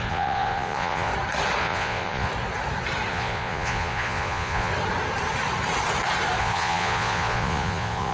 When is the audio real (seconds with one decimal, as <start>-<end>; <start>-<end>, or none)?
1.1-1.6; 2.3-3.1; 4.7-6.4